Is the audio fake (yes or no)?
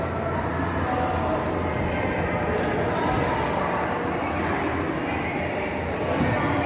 no